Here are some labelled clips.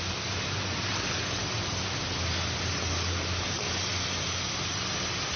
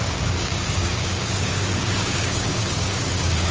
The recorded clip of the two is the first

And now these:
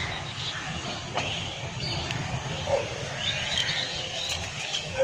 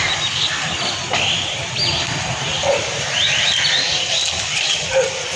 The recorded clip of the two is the second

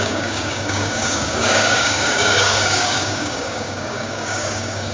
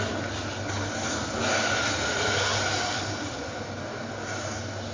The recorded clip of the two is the second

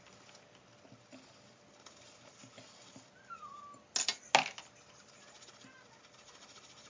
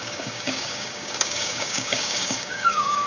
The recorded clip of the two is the first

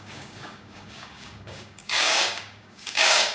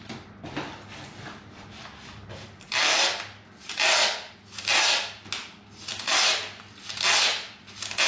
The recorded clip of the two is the second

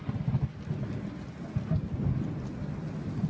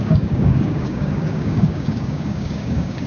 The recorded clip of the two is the first